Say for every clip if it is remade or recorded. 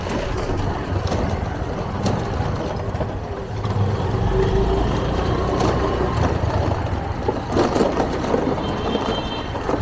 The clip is recorded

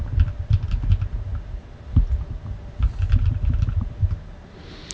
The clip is recorded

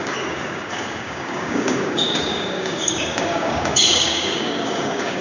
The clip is remade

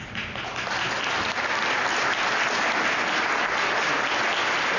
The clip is recorded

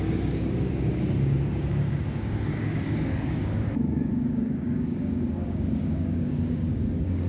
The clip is remade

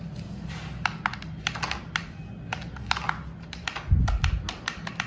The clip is recorded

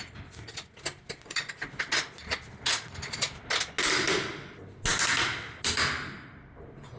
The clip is recorded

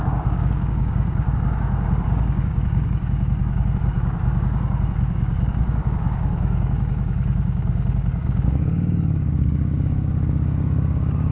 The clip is remade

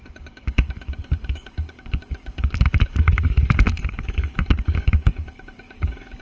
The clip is remade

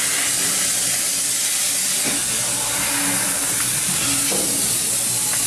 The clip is recorded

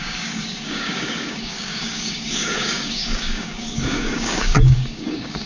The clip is remade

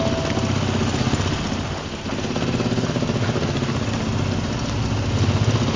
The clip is recorded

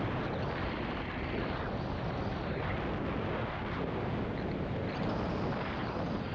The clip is recorded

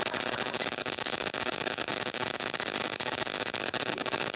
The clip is remade